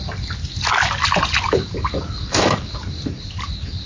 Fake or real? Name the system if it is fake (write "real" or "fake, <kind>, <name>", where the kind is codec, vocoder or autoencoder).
real